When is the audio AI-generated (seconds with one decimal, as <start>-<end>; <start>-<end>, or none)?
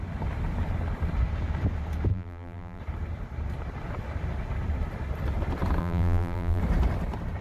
2.1-2.8; 5.8-6.6